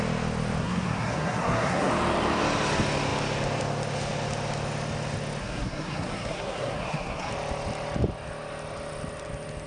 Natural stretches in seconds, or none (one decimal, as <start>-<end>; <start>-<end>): 0.0-0.6; 1.9-5.4; 7.3-9.7